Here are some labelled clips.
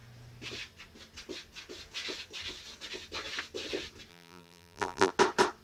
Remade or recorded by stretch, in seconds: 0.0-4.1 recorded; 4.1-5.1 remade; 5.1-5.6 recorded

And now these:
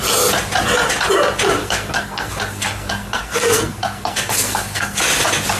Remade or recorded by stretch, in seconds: 0.0-1.6 recorded; 1.6-5.0 remade; 5.0-5.6 recorded

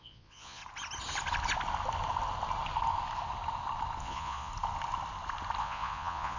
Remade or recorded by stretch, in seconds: 0.0-0.6 remade; 0.6-4.0 recorded; 4.0-4.5 remade; 4.5-5.6 recorded; 5.6-6.4 remade

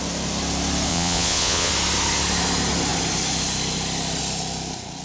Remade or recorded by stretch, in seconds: 0.0-0.9 recorded; 0.9-1.7 remade; 1.7-5.0 recorded